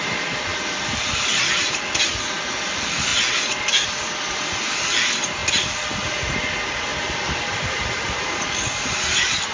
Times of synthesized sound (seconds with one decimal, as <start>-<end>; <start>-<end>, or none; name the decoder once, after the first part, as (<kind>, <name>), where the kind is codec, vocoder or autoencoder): 0.5-2.0 (vocoder, BigVGAN v2); 5.4-6.1; 6.9-8.3